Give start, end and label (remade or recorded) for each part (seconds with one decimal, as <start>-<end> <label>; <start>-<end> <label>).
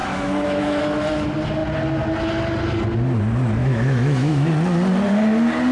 0.0-0.8 remade; 0.8-3.6 recorded; 3.6-4.5 remade; 4.5-5.7 recorded